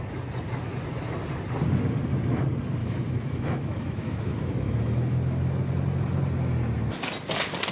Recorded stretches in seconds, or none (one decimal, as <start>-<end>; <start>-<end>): 0.0-2.8; 5.6-7.7